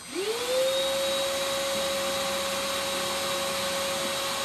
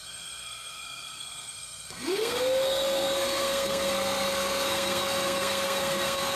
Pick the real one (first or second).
first